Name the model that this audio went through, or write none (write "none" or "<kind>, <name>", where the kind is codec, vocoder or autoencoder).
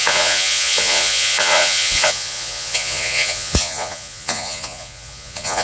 vocoder, Vocos